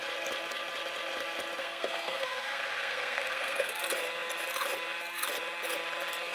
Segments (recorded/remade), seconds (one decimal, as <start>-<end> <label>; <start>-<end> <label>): 0.0-1.6 recorded; 1.6-3.8 remade; 3.8-6.3 recorded